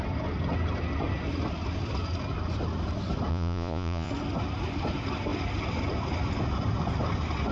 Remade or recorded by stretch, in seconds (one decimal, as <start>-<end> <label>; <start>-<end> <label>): 0.0-3.3 recorded; 3.3-4.1 remade; 4.1-7.5 recorded